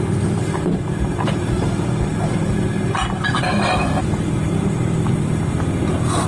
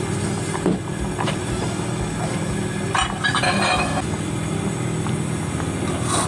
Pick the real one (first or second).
second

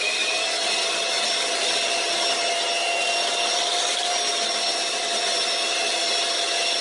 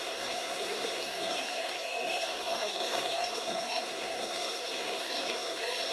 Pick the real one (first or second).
first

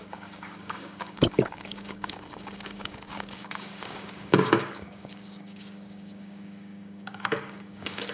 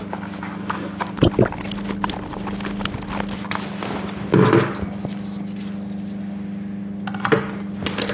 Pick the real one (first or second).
second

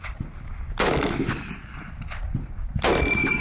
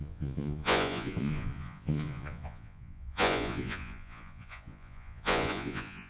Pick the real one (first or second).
first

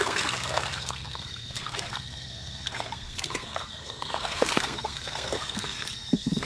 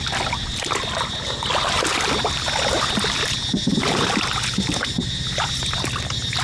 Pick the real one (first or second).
second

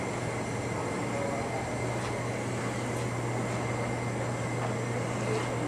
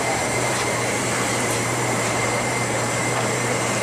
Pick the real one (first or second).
first